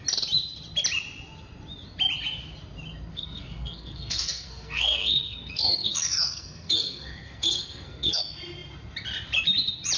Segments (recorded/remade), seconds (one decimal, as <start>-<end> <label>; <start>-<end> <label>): 0.0-3.1 recorded; 3.1-8.2 remade; 8.2-10.0 recorded